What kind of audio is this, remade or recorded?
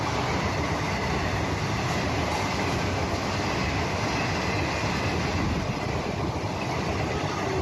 recorded